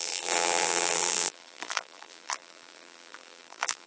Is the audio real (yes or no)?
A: no